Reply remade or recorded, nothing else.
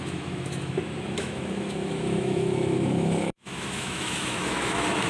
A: remade